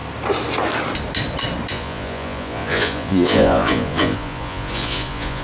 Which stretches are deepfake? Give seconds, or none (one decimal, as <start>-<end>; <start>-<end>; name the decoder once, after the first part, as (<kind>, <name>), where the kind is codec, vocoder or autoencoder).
1.7-5.4 (vocoder, Vocos)